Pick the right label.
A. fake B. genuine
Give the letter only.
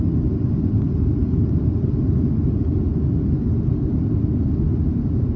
B